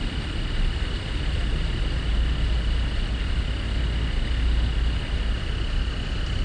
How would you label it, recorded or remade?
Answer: recorded